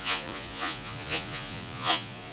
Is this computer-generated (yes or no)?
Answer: yes